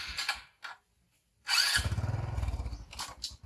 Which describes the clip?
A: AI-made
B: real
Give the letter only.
B